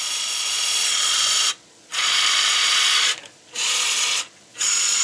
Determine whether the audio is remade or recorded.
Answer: remade